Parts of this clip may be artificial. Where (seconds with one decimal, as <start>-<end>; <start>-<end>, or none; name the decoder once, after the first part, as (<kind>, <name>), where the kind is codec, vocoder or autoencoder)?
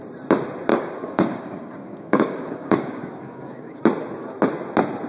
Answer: 0.7-3.8 (codec, DAC)